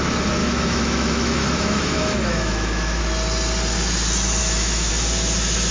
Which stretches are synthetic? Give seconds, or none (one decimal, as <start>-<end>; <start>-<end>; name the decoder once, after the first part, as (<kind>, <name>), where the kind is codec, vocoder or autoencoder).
0.4-3.0 (autoencoder, DAC-VAE); 4.4-4.9